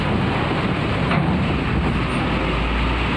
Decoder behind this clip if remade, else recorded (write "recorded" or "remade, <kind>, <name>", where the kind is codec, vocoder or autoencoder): recorded